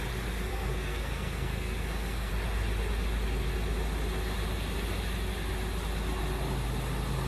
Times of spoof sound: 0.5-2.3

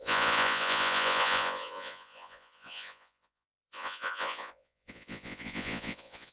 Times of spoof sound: 0.0-6.3

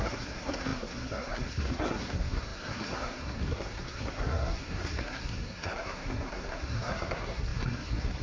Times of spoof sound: 0.0-8.2

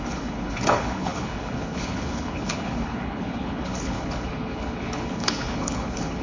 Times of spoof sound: 0.0-6.2

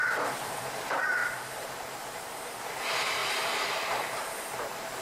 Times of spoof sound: 0.0-5.0

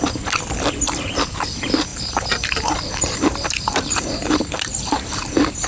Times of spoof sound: 1.9-5.3

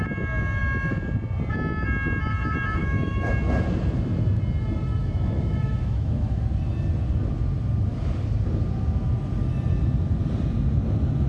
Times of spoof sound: 2.8-3.3; 5.0-6.4

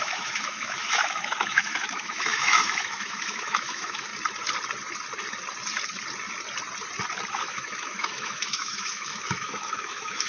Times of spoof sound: 0.0-4.1; 7.3-10.3